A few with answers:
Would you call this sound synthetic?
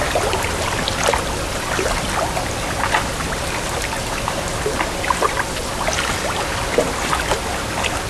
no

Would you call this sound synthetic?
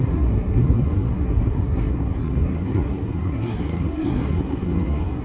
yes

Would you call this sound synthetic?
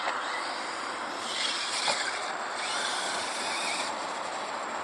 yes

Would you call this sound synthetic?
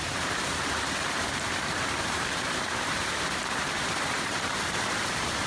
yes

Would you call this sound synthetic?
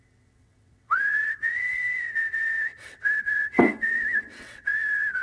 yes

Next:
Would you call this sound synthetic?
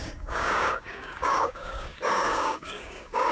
yes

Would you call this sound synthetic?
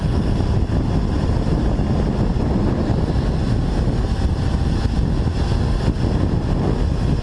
no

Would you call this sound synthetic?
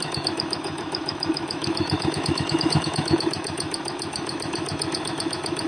yes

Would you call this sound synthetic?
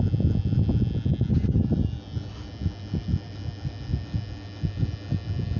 no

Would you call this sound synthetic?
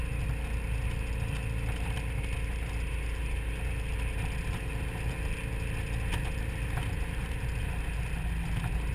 no